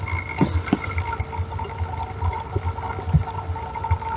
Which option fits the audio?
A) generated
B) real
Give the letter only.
B